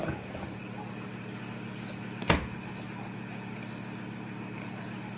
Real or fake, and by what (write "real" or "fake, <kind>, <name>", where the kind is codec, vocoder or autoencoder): real